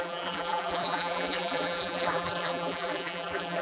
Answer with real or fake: fake